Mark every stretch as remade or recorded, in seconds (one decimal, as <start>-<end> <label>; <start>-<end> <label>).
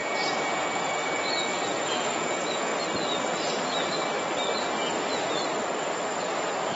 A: 0.0-2.7 remade; 2.7-6.8 recorded